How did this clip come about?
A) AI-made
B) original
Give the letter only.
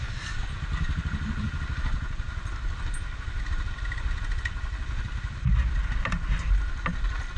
B